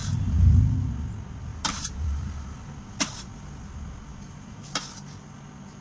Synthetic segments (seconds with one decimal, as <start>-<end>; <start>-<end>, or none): 0.0-0.5; 1.5-2.7; 4.1-4.6